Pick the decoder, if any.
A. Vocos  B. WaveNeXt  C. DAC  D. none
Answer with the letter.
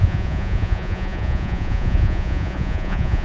A